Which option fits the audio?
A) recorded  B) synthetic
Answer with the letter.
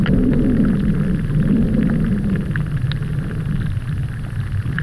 A